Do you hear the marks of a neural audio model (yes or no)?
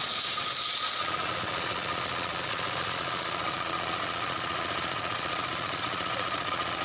yes